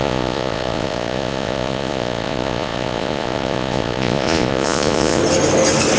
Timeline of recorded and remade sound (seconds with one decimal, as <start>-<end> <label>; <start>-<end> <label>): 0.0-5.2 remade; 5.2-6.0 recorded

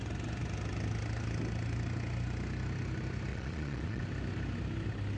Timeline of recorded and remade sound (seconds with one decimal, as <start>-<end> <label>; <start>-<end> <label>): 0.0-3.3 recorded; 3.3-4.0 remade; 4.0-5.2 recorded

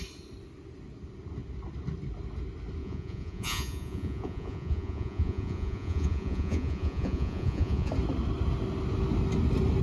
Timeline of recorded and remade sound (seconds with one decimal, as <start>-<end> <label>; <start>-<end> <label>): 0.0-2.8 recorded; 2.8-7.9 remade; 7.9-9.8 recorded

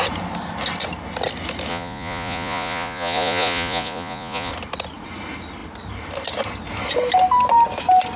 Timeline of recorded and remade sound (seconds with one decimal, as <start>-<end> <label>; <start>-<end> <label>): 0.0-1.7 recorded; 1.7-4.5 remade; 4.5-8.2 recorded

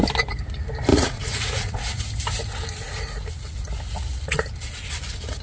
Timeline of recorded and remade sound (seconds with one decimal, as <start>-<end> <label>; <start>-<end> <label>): 0.0-0.9 recorded; 0.9-2.0 remade; 2.0-5.4 recorded

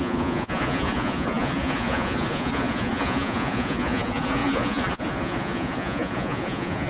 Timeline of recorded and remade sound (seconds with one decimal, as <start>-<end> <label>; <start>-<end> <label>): 0.0-6.9 remade